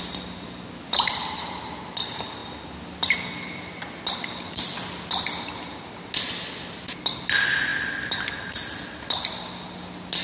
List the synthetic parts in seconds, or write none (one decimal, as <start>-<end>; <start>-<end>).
none